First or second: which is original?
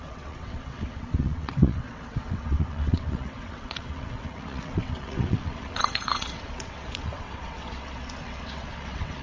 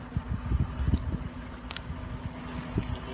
second